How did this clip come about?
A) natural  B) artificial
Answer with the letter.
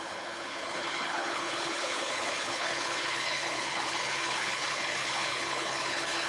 B